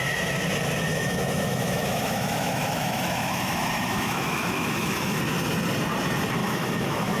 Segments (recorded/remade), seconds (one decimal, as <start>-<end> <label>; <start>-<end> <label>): 0.0-0.9 recorded; 0.9-5.2 remade; 5.2-6.4 recorded; 6.4-7.2 remade